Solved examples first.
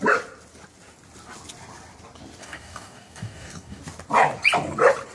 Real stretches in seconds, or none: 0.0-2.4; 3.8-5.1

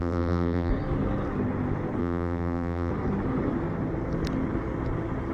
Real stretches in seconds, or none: 0.7-2.0; 2.9-5.3

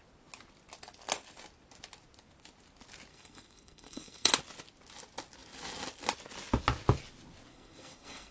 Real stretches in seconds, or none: 0.0-3.1; 4.3-7.5

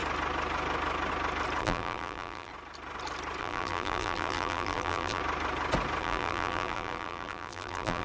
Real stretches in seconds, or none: 0.0-1.6; 2.5-3.4; 5.2-6.0

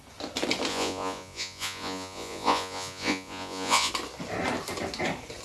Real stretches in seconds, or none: 0.0-0.7; 3.9-5.4